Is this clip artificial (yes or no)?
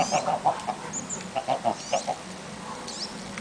no